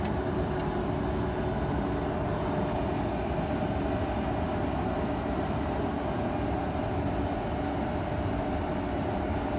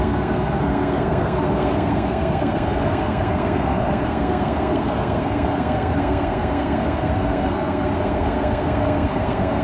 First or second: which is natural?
first